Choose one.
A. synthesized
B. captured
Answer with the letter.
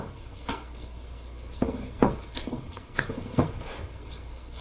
A